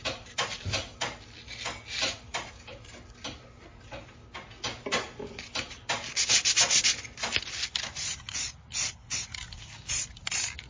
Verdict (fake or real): real